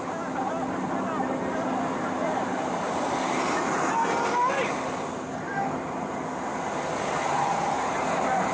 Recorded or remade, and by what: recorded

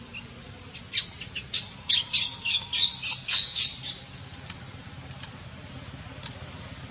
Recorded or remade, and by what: recorded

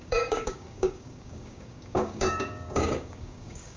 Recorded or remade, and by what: remade, codec, DAC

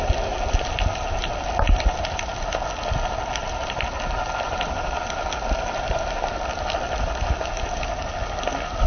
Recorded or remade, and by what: recorded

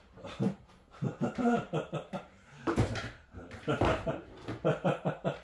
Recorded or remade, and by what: remade, vocoder, BigVGAN v2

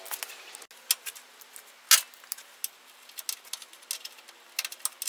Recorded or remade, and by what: recorded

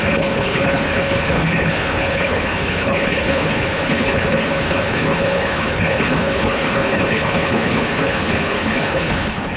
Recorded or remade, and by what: remade, codec, HILCodec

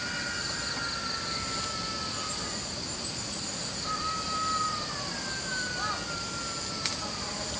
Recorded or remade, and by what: recorded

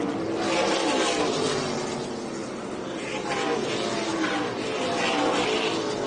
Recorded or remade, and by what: recorded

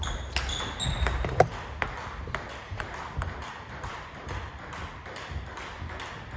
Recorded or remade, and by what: recorded